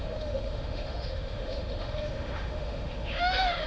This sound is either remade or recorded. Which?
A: remade